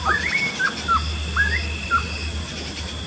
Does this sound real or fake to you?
real